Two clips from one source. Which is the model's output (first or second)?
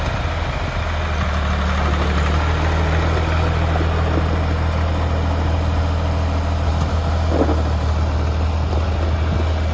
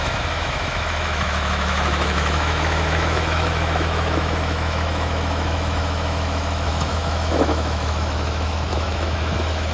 second